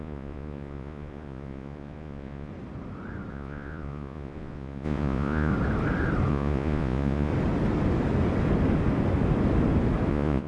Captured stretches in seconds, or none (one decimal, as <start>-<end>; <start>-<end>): 2.5-3.3; 5.5-6.3; 7.3-10.1

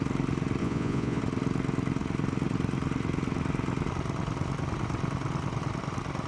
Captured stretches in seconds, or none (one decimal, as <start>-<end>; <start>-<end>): 0.0-0.6; 1.2-6.3

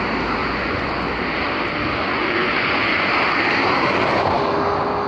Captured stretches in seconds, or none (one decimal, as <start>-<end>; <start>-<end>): 0.0-0.4; 1.1-2.1; 3.1-5.1

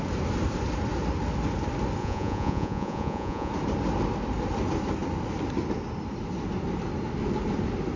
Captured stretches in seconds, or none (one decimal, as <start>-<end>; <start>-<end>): 0.0-2.0; 3.5-8.0

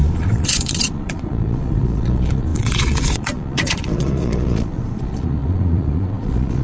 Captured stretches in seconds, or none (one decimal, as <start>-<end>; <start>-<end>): none

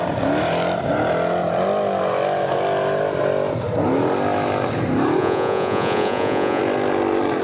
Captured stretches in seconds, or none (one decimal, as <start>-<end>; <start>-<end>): 0.0-5.2; 6.6-7.4